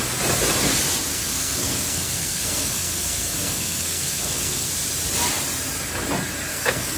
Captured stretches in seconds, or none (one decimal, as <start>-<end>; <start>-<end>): 0.0-1.1; 4.7-6.5